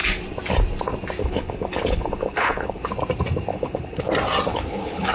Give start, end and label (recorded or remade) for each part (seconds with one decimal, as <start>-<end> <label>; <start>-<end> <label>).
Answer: 0.0-1.2 recorded; 1.2-2.9 remade; 2.9-3.5 recorded; 3.5-4.1 remade; 4.1-4.5 recorded; 4.5-5.1 remade